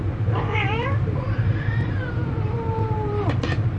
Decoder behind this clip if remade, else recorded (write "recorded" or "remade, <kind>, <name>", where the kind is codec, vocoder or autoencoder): remade, vocoder, BigVGAN v2